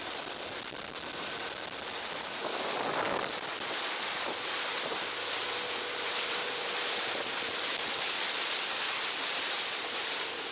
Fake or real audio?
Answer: real